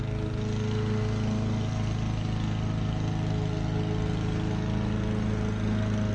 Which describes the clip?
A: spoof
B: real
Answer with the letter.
B